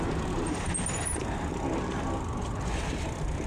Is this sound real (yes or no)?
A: yes